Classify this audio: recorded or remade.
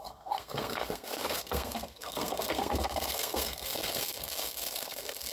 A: remade